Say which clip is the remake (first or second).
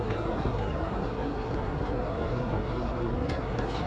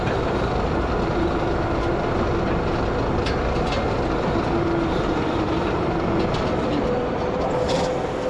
first